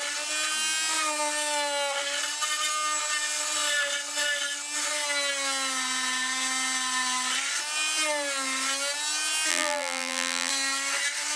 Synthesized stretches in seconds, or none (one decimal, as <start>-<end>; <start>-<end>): 9.5-10.5